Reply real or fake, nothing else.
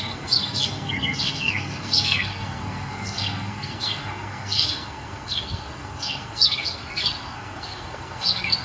fake